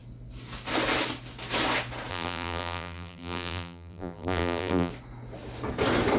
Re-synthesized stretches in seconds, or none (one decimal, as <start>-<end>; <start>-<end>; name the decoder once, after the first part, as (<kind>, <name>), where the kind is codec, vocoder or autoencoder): 2.1-4.9 (vocoder, BigVGAN v2)